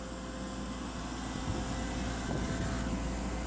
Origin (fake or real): real